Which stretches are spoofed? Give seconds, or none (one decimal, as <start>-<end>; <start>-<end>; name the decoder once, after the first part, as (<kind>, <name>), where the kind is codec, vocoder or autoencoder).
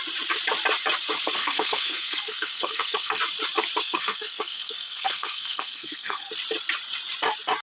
1.4-3.2 (codec, SNAC); 3.8-6.3